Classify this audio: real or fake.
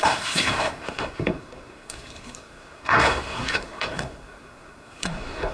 fake